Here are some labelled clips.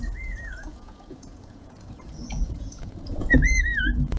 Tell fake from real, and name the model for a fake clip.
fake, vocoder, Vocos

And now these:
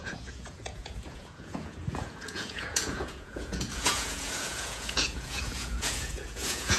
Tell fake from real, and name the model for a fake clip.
fake, vocoder, Vocos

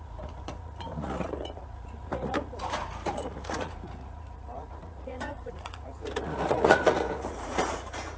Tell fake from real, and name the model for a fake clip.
fake, vocoder, Vocos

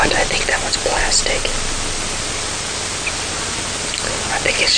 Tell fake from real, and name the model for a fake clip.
real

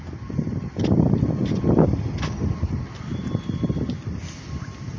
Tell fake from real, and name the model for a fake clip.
real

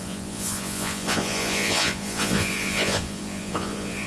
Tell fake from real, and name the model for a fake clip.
fake, vocoder, Vocos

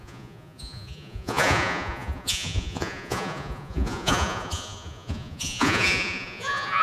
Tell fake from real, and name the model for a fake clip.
fake, vocoder, Vocos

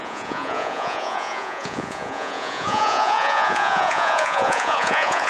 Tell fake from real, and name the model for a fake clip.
fake, vocoder, Vocos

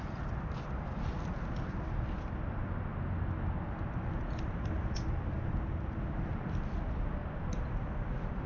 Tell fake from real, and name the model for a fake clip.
real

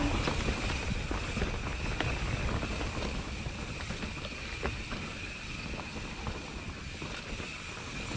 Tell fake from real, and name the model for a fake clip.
real